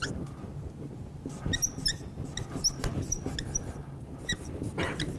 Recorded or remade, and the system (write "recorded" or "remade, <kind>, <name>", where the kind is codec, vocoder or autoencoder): recorded